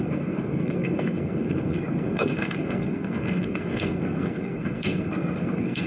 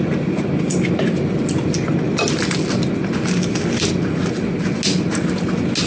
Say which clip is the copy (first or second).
first